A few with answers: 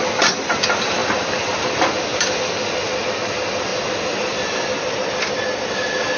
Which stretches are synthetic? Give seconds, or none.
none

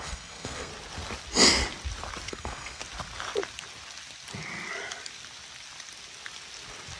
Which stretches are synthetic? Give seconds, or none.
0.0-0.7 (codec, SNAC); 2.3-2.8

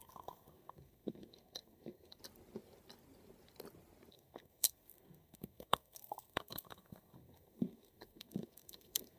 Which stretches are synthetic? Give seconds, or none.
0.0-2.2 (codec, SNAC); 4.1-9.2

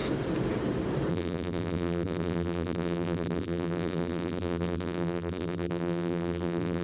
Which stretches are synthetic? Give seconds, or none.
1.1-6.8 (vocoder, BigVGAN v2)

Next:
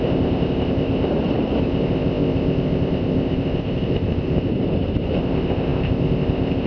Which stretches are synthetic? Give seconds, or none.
0.0-1.1 (codec, ZipCodec); 1.6-4.5; 5.2-6.7